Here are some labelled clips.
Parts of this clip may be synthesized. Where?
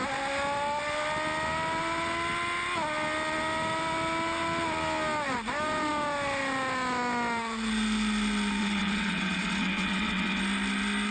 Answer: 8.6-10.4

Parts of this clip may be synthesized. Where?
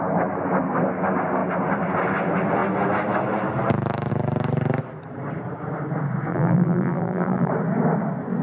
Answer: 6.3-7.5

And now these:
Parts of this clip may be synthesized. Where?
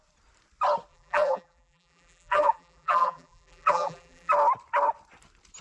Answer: 0.9-4.3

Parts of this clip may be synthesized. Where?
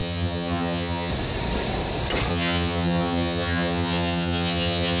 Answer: 0.0-1.1; 2.3-5.0